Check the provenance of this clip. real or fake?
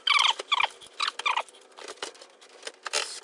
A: real